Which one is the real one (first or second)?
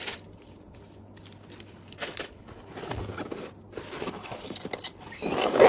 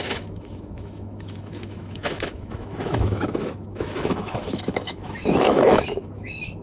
first